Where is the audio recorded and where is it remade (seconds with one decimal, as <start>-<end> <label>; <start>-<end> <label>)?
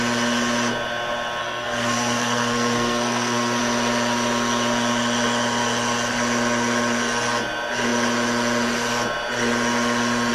0.0-1.4 recorded; 1.4-3.6 remade; 3.6-10.3 recorded